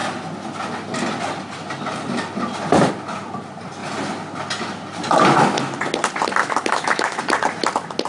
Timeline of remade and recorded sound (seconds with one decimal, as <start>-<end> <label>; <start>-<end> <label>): 0.0-6.4 recorded; 6.4-7.2 remade; 7.2-8.1 recorded